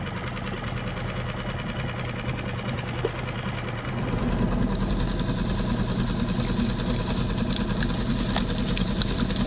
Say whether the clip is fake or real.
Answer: real